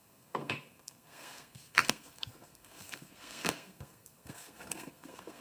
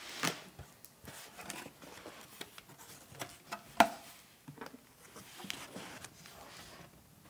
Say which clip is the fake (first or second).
first